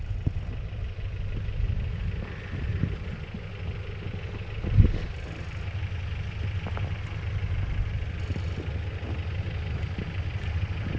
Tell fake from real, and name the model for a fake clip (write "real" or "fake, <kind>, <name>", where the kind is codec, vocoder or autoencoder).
real